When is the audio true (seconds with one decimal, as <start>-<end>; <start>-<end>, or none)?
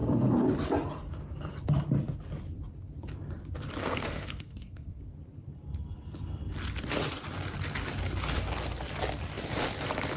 0.0-3.8; 5.0-10.2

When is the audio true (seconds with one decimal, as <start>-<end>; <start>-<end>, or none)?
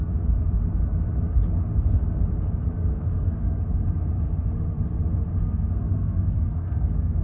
0.0-2.9; 3.6-5.4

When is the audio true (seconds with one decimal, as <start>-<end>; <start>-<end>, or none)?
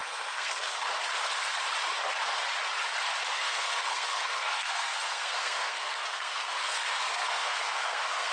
0.8-3.3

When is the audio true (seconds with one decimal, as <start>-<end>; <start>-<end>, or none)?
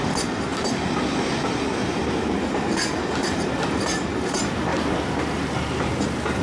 0.0-6.4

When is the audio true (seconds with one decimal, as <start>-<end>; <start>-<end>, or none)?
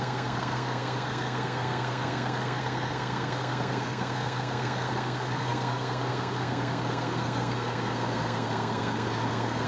none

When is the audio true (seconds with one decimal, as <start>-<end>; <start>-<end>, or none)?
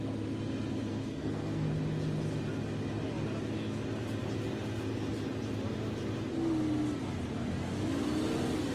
0.0-0.9; 1.7-8.7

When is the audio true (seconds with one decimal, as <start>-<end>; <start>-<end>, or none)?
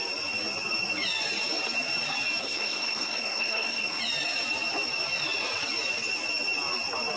0.0-2.4; 4.0-7.2